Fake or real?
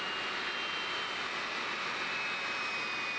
real